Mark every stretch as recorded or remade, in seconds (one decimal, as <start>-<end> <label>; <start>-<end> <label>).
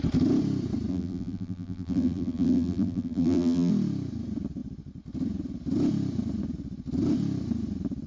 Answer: 0.0-0.9 recorded; 0.9-3.7 remade; 3.7-8.1 recorded